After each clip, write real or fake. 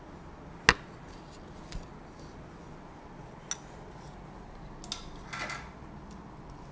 real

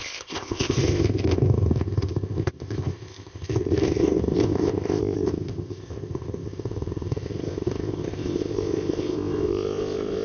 fake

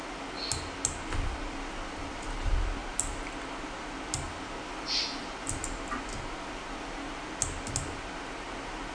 real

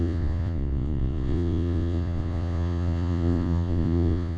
fake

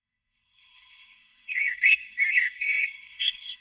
fake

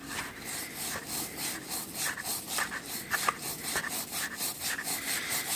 fake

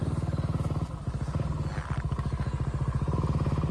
real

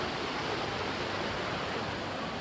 real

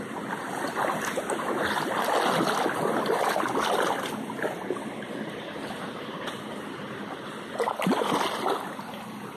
real